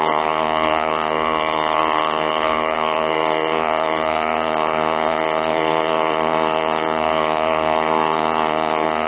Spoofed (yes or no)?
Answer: yes